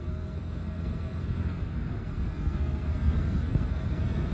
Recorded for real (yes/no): no